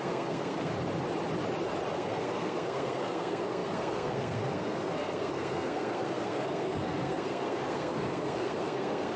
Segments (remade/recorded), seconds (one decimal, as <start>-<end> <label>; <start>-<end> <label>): 0.0-0.7 remade; 0.7-1.9 recorded; 1.9-9.2 remade